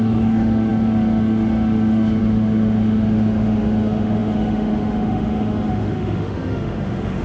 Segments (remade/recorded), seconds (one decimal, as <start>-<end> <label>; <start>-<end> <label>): 0.0-7.2 remade